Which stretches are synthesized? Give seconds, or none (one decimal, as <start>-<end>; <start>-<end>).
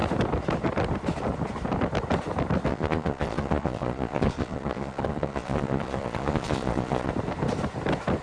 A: 2.7-7.1